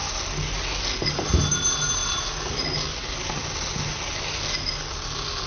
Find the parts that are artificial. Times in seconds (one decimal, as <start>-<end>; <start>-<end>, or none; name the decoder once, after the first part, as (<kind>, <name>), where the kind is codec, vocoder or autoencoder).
none